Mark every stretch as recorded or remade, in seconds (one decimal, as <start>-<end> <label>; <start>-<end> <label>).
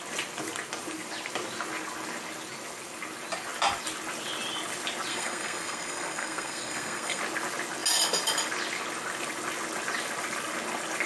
0.0-5.1 recorded; 5.1-7.2 remade; 7.2-11.1 recorded